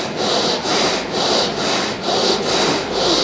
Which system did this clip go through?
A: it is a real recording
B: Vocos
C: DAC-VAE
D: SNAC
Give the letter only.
A